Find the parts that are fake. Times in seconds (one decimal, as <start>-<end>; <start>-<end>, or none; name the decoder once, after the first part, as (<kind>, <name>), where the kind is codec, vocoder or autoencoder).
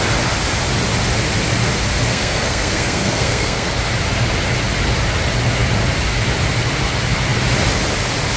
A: 2.1-3.7 (codec, SNAC)